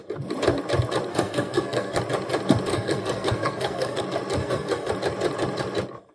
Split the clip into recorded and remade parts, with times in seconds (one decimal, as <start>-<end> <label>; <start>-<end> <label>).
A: 0.0-1.1 recorded; 1.1-2.0 remade; 2.0-2.7 recorded; 2.7-4.0 remade; 4.0-4.4 recorded; 4.4-4.9 remade; 4.9-6.1 recorded